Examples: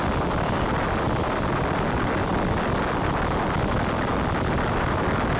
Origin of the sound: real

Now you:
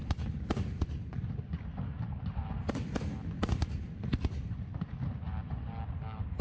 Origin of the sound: real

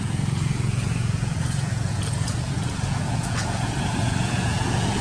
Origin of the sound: fake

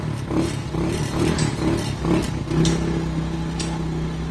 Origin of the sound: real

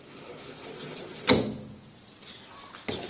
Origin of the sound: real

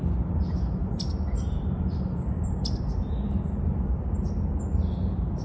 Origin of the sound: real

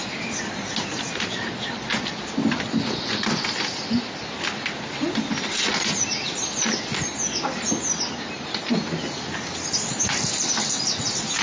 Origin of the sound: real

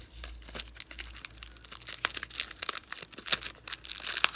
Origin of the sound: real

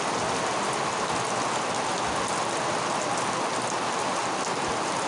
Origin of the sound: real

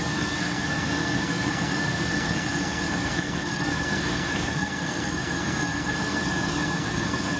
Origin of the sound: fake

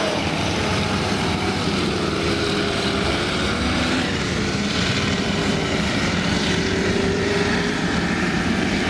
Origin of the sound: fake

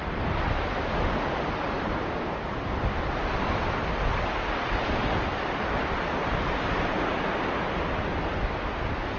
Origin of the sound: real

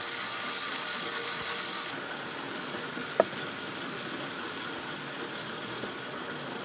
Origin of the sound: real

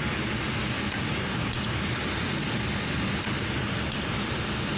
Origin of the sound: real